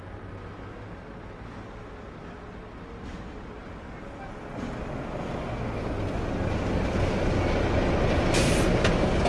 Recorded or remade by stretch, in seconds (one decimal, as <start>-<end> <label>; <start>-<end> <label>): 0.0-9.3 recorded